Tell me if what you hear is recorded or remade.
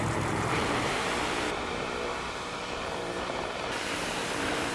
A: remade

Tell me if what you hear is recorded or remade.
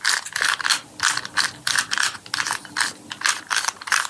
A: recorded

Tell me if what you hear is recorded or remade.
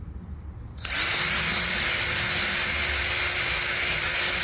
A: recorded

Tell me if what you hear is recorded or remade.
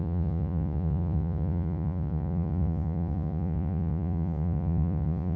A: remade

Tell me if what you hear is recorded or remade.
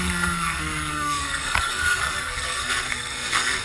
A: remade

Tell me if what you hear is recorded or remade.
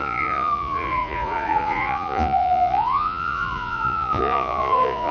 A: remade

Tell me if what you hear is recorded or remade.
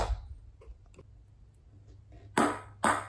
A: recorded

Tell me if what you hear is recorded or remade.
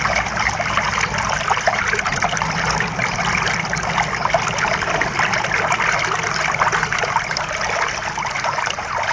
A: recorded